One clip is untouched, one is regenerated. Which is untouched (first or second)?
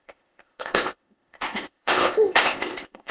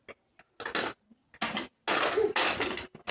second